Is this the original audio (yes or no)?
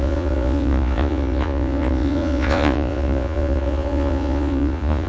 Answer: no